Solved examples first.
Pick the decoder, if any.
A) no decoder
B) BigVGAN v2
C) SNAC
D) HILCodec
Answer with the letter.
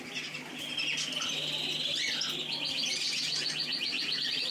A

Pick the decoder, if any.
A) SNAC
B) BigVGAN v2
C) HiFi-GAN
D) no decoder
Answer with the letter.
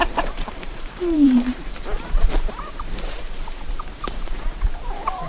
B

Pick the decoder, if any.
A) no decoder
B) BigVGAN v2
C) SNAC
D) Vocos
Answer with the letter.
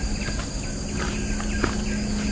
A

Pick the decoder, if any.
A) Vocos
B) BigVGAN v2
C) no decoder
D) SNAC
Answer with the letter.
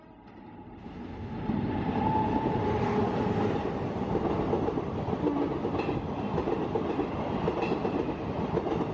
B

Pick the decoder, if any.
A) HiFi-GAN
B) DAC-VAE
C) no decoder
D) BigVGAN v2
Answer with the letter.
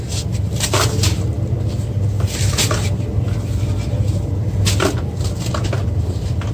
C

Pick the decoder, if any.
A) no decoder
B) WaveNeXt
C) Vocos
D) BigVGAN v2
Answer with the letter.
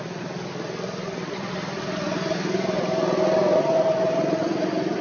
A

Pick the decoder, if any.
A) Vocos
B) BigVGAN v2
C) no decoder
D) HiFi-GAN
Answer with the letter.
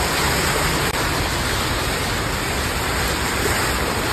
C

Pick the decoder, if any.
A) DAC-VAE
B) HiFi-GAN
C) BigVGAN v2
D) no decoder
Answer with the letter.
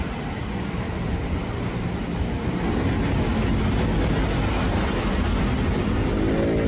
D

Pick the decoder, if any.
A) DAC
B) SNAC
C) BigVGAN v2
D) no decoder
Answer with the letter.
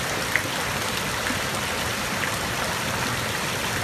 C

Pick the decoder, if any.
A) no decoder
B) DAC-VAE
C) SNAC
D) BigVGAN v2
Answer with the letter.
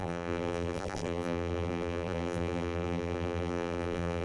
D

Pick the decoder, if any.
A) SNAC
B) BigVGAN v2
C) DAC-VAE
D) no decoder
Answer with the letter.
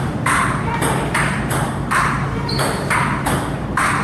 B